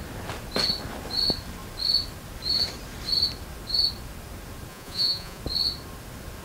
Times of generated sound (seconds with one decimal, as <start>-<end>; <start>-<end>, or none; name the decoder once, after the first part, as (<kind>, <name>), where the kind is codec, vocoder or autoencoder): 4.7-5.4 (vocoder, Vocos)